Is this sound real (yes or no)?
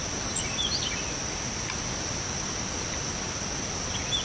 yes